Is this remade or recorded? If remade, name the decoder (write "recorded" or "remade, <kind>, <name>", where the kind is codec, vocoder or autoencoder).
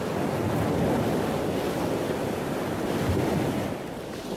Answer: recorded